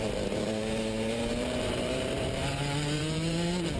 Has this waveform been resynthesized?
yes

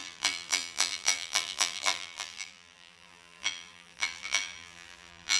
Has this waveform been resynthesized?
yes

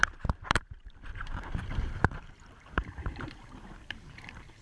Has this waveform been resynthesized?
yes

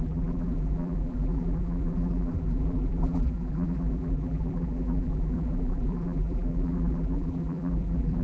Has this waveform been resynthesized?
yes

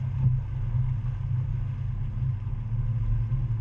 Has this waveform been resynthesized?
no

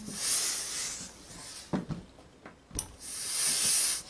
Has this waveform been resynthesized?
no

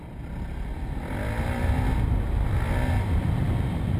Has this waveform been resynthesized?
no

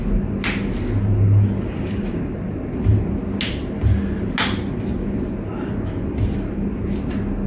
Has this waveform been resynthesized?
no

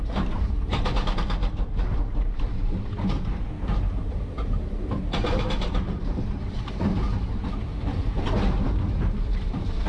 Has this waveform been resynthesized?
yes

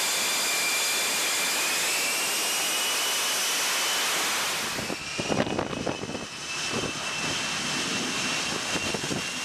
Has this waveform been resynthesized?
no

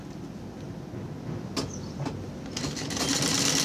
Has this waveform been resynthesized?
no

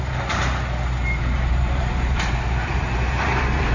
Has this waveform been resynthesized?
yes